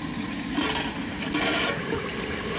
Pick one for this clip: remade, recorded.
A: recorded